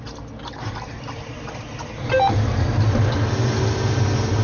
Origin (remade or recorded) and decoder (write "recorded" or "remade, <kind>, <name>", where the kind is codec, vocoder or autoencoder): recorded